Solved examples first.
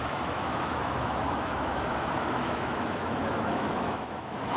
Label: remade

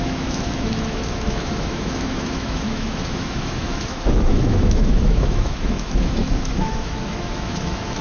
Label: remade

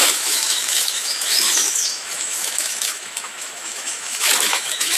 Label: remade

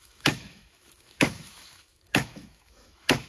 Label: remade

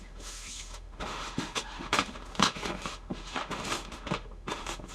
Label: remade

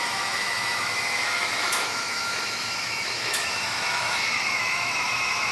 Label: remade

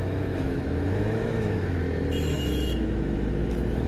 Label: remade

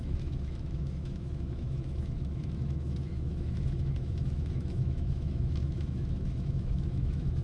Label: remade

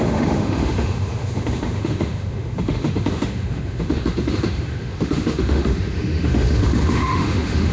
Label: remade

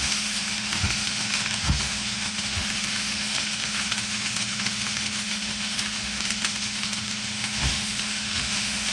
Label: remade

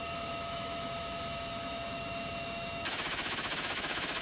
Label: remade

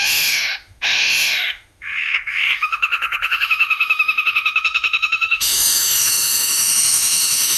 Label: remade